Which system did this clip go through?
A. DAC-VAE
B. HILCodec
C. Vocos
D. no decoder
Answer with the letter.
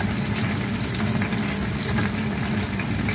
D